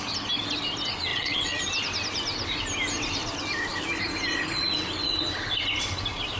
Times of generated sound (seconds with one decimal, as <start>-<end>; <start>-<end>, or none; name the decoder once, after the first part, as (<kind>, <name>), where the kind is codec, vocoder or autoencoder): 1.1-1.6 (vocoder, WaveNeXt)